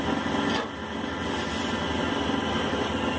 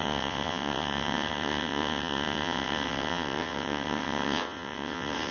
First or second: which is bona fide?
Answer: first